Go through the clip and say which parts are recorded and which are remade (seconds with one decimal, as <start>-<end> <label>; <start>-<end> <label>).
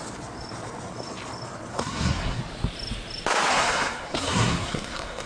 0.0-1.7 recorded; 1.7-2.4 remade; 2.4-3.5 recorded; 3.5-5.3 remade